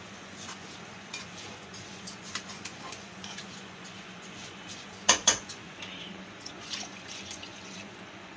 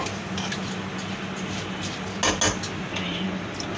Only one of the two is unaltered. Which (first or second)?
second